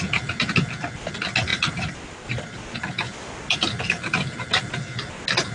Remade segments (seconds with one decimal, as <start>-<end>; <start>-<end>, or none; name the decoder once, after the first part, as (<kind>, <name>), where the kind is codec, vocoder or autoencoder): 1.5-2.6 (vocoder, BigVGAN v2)